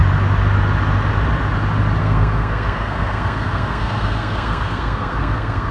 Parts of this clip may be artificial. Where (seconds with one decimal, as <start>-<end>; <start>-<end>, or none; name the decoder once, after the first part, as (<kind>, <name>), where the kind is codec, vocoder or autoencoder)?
2.0-5.7 (codec, SNAC)